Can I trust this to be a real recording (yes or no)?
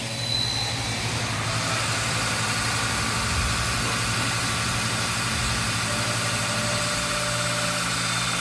yes